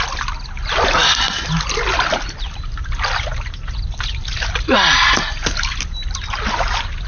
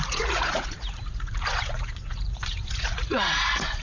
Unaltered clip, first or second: first